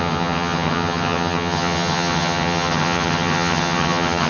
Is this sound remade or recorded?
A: remade